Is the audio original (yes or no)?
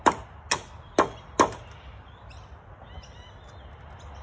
yes